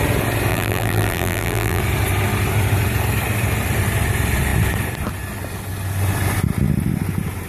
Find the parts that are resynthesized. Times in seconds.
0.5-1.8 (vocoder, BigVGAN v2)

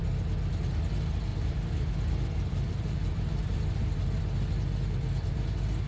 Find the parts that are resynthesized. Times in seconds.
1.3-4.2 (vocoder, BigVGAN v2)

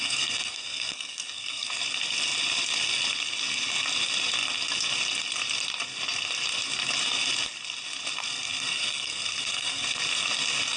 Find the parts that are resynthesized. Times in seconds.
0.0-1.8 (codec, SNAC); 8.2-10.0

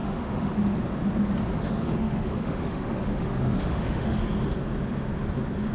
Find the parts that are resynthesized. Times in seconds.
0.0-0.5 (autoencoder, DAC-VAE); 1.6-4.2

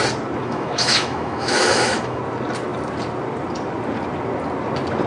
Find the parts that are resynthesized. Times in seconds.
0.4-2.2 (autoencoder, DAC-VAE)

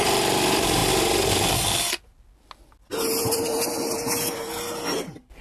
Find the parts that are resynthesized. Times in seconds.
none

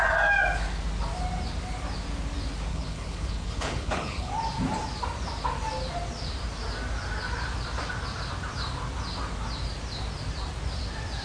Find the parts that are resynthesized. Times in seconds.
2.7-4.3 (codec, HILCodec)